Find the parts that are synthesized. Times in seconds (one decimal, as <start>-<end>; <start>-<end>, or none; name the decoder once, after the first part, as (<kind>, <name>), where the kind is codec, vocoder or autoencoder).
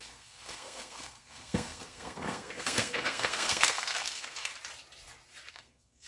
0.0-4.5 (codec, SNAC); 5.5-6.1